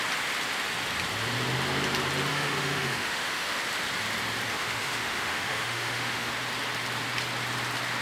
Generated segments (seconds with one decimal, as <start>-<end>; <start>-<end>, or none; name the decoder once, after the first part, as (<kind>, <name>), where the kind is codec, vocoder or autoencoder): 2.3-3.6 (autoencoder, DAC-VAE); 4.5-6.3